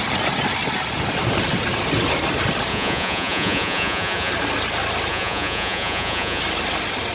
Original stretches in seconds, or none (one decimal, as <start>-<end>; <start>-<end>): 0.0-2.7; 4.3-5.1; 6.4-7.1